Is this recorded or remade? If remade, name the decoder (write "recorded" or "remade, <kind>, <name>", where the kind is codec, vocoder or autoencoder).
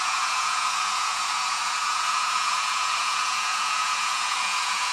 remade, vocoder, Vocos